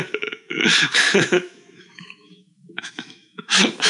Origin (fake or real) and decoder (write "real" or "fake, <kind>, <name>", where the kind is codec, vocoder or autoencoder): fake, autoencoder, DAC-VAE